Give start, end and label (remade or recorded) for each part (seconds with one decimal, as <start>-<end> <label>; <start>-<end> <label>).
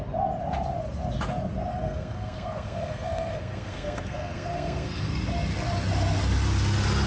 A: 0.0-1.7 recorded; 1.7-5.1 remade; 5.1-7.1 recorded